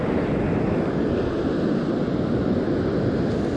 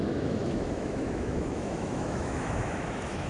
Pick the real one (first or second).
first